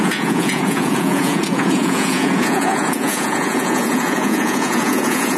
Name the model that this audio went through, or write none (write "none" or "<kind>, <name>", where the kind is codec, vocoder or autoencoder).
vocoder, Vocos